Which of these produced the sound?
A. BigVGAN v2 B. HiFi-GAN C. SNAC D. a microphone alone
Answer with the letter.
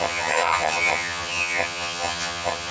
B